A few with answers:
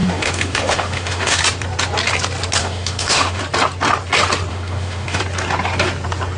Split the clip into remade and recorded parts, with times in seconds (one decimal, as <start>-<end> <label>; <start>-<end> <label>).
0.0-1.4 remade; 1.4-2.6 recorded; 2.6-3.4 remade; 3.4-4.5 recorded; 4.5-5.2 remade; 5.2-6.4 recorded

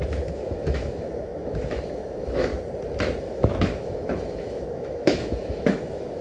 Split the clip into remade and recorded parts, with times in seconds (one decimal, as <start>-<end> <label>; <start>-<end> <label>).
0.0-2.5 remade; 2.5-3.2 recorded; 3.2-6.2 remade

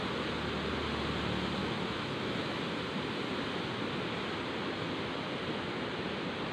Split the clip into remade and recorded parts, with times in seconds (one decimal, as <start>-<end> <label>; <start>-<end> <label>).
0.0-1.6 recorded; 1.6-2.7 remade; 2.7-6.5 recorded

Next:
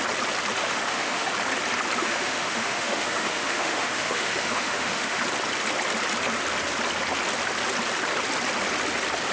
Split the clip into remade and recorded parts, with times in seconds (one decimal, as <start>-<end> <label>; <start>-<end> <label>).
0.0-0.6 recorded; 0.6-1.3 remade; 1.3-2.0 recorded; 2.0-5.2 remade; 5.2-9.3 recorded

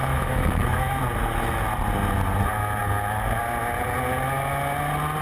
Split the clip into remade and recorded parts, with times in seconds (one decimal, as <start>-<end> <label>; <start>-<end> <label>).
0.0-1.0 remade; 1.0-5.2 recorded